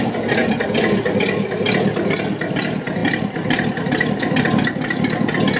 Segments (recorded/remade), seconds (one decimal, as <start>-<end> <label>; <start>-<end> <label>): 0.0-5.6 recorded